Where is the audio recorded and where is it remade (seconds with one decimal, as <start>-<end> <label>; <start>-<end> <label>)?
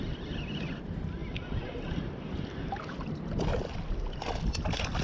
0.0-5.0 recorded